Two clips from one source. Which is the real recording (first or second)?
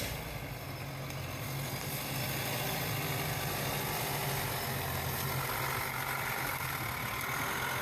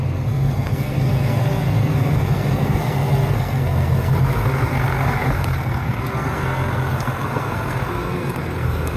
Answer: first